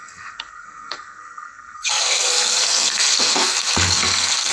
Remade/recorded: remade